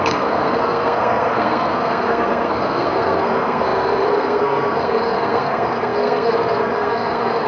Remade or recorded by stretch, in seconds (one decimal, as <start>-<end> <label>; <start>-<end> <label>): 0.0-7.5 remade